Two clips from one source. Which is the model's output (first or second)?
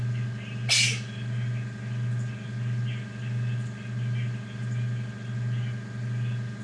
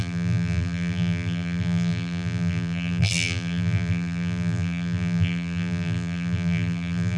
second